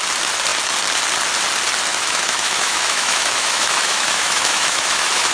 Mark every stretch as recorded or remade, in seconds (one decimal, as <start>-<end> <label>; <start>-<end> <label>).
0.0-1.9 recorded; 1.9-5.3 remade